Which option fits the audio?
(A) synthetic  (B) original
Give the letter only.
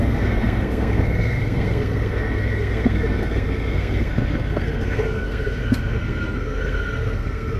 A